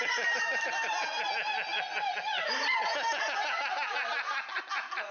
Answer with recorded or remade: recorded